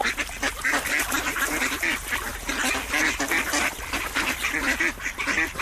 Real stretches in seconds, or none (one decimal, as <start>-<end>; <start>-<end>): 0.0-5.6